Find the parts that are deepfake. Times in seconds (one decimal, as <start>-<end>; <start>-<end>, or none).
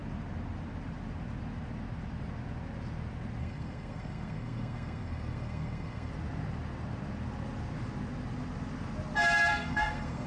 3.4-6.1; 9.5-10.3